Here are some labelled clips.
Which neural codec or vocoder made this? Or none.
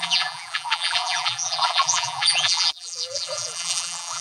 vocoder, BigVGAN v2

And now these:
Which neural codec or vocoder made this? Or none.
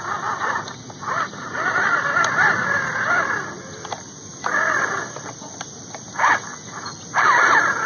none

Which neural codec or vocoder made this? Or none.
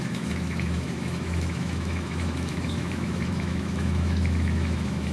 autoencoder, DAC-VAE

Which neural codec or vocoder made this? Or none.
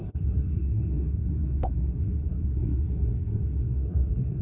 codec, SNAC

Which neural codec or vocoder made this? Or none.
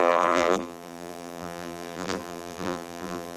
vocoder, BigVGAN v2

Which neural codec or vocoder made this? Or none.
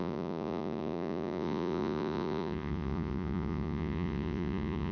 vocoder, Vocos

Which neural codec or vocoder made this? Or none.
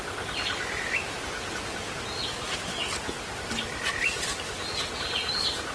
none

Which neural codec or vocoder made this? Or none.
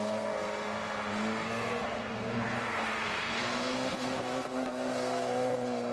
codec, SNAC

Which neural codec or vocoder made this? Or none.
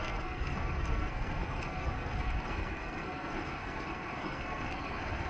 codec, SNAC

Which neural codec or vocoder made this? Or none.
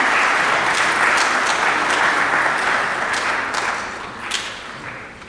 none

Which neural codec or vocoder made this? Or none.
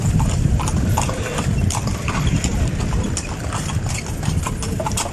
vocoder, BigVGAN v2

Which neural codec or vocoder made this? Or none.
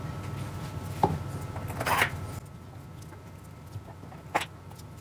none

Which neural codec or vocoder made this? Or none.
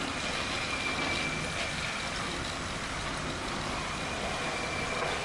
none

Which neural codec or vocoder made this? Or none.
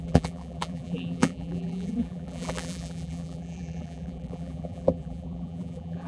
vocoder, BigVGAN v2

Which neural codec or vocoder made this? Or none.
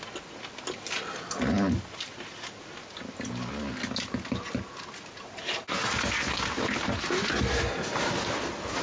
none